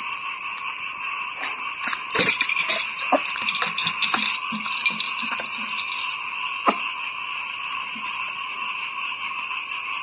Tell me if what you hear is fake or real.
real